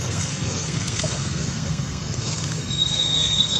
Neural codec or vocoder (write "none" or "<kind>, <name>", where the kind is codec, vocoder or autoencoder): codec, SNAC